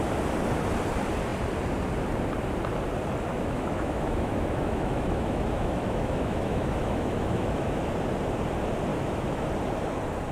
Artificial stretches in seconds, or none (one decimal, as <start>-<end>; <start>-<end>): 3.3-7.8; 8.9-9.5